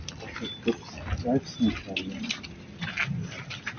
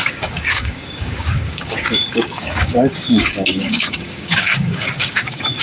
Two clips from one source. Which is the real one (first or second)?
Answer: first